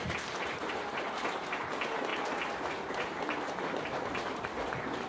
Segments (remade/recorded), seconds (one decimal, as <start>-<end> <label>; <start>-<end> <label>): 0.0-5.1 recorded